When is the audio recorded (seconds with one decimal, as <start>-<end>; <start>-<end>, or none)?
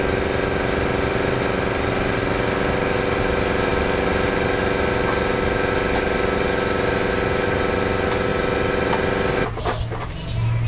0.0-10.7